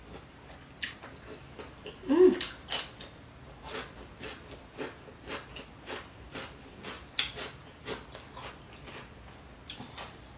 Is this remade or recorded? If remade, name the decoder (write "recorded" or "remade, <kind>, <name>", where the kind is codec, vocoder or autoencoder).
recorded